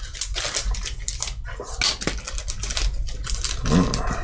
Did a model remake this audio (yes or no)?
no